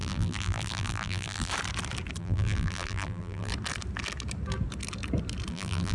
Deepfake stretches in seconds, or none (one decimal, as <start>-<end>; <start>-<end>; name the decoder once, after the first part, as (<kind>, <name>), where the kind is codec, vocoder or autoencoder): 0.0-1.5 (vocoder, BigVGAN v2); 2.2-3.5; 5.5-5.9